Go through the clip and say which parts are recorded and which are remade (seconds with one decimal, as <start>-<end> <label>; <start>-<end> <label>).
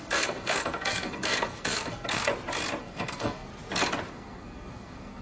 0.0-2.3 remade; 2.3-2.8 recorded; 2.8-3.5 remade; 3.5-4.1 recorded; 4.1-5.2 remade